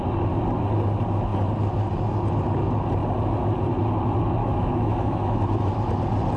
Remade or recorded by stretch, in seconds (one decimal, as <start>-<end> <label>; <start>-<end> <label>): 0.0-4.4 recorded; 4.4-5.7 remade; 5.7-6.4 recorded

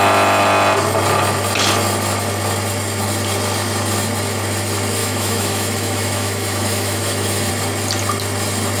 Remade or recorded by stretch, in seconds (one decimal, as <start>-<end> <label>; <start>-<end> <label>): 0.0-5.0 recorded; 5.0-7.5 remade; 7.5-8.8 recorded

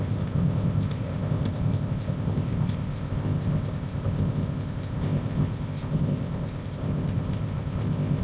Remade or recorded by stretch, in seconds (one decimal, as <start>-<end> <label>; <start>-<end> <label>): 0.0-8.2 remade

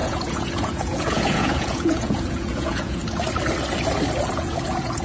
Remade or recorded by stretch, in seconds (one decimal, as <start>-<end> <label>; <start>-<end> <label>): 0.0-3.0 remade; 3.0-4.3 recorded; 4.3-5.0 remade

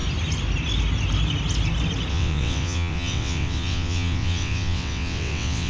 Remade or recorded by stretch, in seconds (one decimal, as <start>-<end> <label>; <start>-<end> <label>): 0.0-2.1 recorded; 2.1-5.7 remade